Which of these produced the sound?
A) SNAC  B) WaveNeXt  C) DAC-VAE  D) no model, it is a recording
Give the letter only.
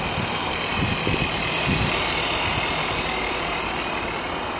D